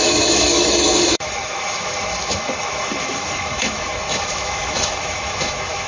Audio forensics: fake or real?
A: fake